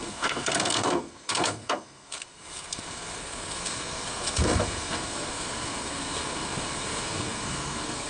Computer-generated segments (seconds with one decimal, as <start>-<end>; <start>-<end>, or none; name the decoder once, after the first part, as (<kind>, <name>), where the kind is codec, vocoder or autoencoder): 0.0-8.1 (codec, SNAC)